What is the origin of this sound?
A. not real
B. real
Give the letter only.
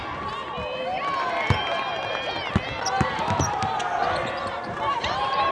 B